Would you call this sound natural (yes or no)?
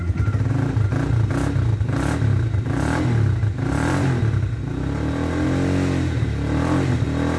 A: yes